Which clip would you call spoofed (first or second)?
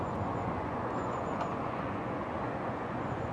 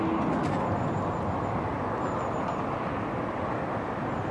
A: first